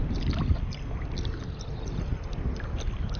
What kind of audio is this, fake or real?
real